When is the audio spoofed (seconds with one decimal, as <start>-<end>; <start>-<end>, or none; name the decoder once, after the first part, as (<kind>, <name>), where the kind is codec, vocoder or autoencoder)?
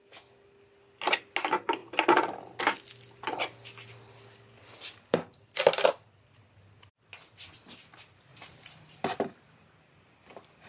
8.3-9.2 (vocoder, BigVGAN v2)